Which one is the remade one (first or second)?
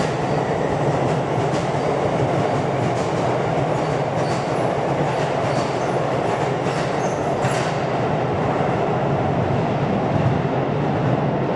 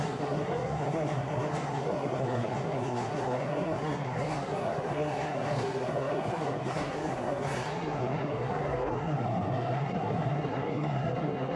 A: second